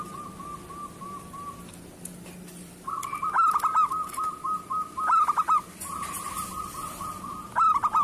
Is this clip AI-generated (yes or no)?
no